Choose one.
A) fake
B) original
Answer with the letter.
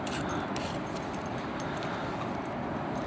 B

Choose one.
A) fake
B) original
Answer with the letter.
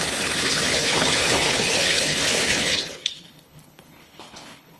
A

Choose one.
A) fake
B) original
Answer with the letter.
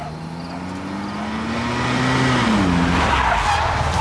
B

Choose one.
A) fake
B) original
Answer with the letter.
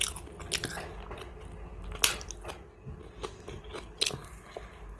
B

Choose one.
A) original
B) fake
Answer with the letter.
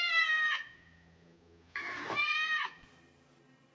A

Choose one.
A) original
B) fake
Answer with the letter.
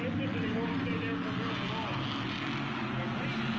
A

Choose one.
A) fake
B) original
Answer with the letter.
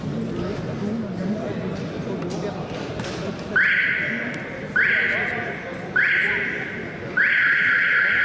B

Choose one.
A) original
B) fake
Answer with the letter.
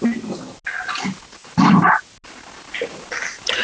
A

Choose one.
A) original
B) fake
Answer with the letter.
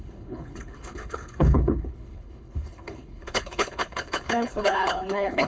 B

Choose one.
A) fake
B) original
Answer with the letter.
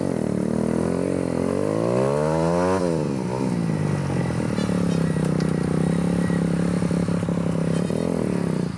B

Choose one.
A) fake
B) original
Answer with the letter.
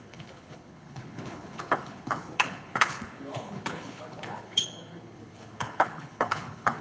A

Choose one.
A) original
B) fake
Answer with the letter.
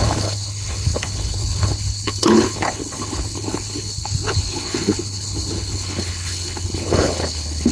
B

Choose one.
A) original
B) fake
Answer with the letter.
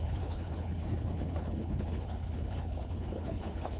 B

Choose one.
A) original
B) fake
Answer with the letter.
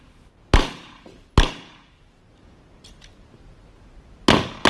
A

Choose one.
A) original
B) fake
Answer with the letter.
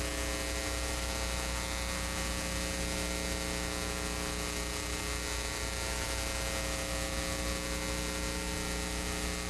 A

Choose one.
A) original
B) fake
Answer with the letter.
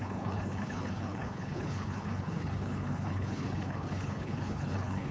B